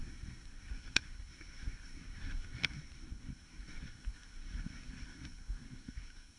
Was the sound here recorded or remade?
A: remade